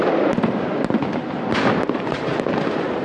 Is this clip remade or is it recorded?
remade